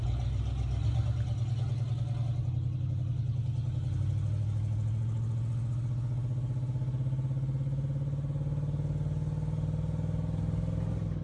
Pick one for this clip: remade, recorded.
recorded